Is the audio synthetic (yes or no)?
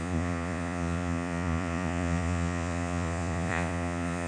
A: yes